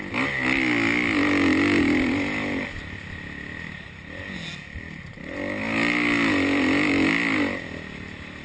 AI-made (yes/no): no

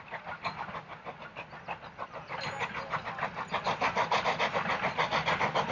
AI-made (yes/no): no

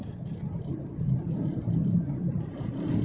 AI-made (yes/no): yes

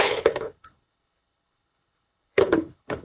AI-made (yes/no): yes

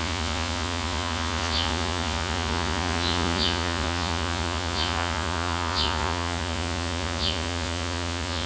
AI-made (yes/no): yes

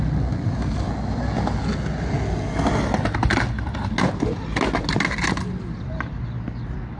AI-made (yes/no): no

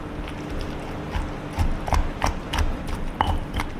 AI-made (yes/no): no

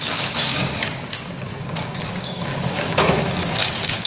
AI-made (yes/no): yes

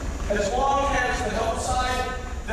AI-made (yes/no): yes